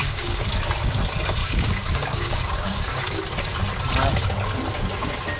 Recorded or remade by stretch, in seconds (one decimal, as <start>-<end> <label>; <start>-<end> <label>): 0.0-0.5 remade; 0.5-1.4 recorded; 1.4-3.2 remade; 3.2-5.4 recorded